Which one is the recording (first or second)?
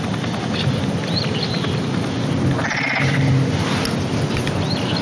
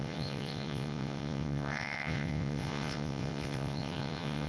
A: first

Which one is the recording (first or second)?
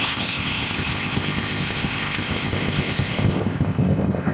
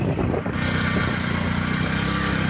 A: second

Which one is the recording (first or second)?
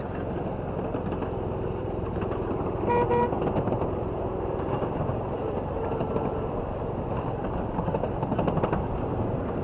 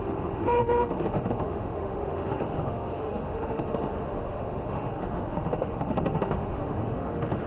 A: first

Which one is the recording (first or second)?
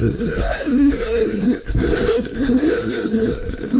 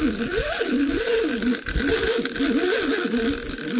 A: second